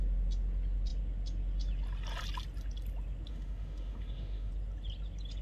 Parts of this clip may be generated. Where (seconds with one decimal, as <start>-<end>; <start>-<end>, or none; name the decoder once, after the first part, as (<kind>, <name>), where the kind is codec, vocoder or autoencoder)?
3.3-4.5 (autoencoder, DAC-VAE)